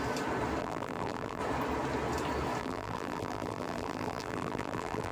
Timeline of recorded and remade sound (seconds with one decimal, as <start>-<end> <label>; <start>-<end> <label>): 0.0-0.6 recorded; 0.6-1.4 remade; 1.4-2.6 recorded; 2.6-5.1 remade